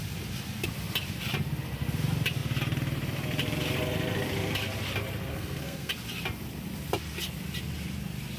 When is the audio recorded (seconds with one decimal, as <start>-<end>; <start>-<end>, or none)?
0.0-5.3; 5.9-8.4